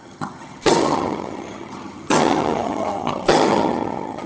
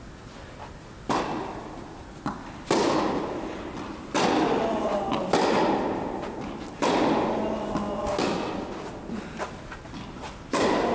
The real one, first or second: second